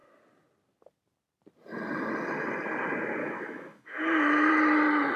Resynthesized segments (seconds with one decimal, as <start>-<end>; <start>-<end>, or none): 3.2-4.5